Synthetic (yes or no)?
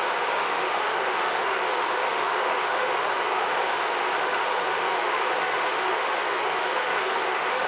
yes